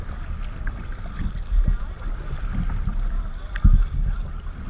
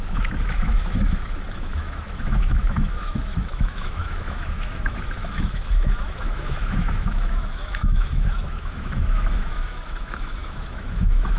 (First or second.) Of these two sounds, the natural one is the first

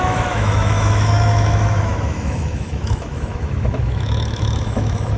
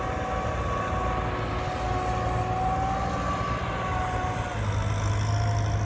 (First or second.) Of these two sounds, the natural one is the second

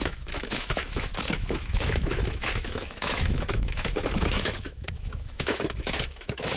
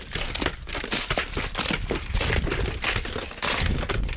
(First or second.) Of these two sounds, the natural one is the second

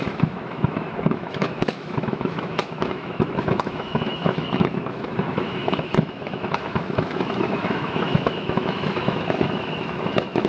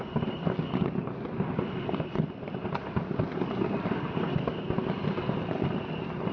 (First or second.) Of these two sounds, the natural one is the second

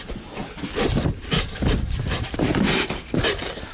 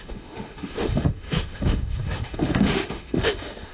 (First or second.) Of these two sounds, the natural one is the first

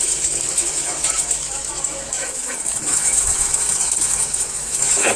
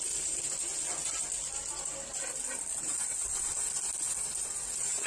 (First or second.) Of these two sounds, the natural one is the second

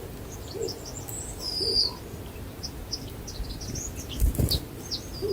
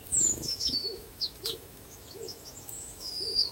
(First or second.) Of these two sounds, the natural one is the first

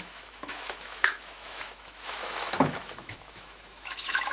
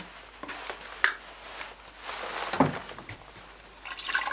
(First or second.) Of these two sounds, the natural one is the second